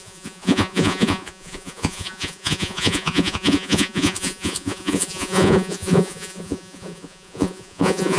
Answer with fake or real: fake